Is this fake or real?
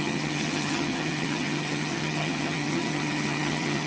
fake